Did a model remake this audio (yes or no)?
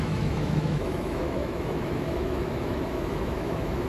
yes